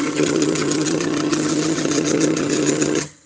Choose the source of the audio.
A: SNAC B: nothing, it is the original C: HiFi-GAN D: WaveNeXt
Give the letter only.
C